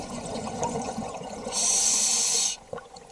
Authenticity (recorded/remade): remade